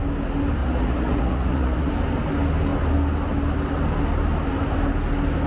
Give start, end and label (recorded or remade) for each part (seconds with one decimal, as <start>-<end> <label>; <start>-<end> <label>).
0.0-0.6 recorded; 0.6-1.9 remade; 1.9-5.5 recorded